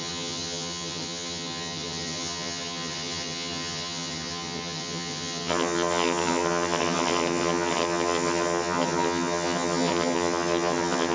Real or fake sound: fake